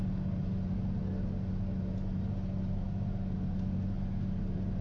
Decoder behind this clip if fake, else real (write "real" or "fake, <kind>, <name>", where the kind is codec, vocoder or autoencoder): real